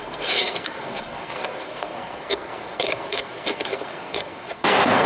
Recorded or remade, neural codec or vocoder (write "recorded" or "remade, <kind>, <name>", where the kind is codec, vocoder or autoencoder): remade, codec, SNAC